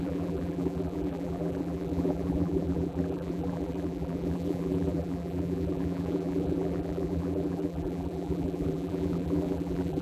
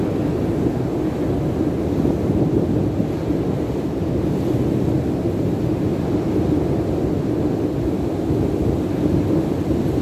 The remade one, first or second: first